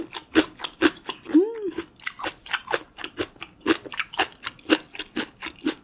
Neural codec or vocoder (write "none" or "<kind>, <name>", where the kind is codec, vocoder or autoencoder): none